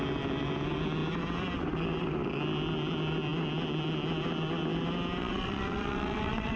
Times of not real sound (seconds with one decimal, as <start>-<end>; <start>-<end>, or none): 5.2-6.6